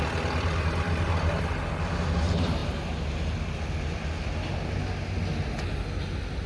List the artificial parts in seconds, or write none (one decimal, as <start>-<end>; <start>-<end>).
none